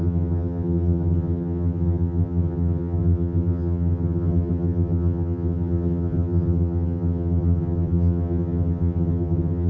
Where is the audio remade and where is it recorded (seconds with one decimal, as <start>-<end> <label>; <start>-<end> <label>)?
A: 0.0-9.7 remade